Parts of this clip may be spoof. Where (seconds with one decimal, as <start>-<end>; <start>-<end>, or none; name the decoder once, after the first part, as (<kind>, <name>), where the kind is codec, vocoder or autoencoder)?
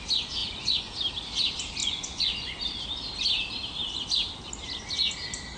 0.4-0.9 (vocoder, Vocos); 1.8-2.6